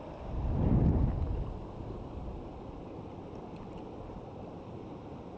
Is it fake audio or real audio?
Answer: real